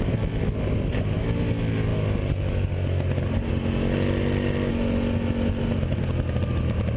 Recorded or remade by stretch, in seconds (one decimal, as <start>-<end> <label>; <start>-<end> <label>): 0.0-7.0 recorded